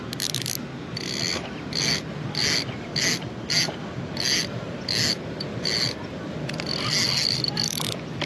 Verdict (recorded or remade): recorded